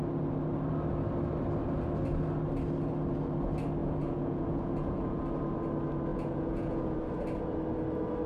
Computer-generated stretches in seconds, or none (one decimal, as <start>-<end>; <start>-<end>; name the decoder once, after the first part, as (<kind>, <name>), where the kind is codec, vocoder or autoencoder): 3.8-5.2 (vocoder, Vocos); 6.1-7.0